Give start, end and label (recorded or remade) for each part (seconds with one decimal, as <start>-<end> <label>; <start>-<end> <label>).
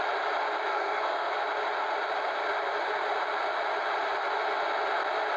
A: 0.0-0.7 recorded; 0.7-1.3 remade; 1.3-5.4 recorded